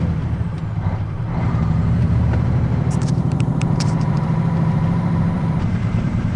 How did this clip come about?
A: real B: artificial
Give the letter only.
B